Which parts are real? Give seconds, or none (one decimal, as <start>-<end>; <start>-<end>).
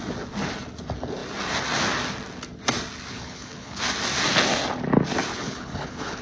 0.0-3.1; 3.8-5.3